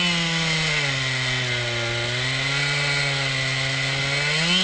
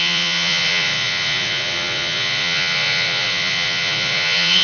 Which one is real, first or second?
first